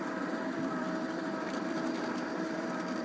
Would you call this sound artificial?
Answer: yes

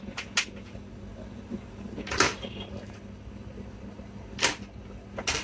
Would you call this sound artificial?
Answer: no